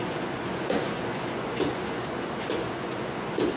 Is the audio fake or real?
fake